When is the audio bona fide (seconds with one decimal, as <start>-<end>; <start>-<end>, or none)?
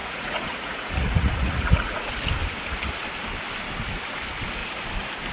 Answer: 2.1-5.3